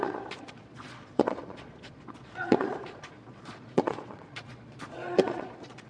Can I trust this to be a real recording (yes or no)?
no